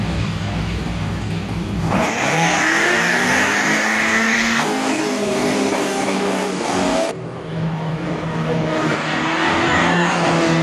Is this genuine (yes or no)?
no